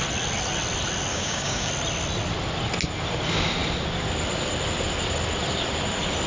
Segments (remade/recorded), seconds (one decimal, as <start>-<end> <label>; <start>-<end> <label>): 0.0-1.1 recorded; 1.1-1.7 remade; 1.7-6.3 recorded